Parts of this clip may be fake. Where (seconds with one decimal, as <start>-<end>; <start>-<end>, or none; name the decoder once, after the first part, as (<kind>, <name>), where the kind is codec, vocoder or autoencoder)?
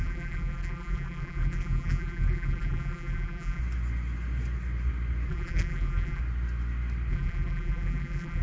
0.0-3.6 (vocoder, BigVGAN v2); 5.3-6.2; 7.1-8.4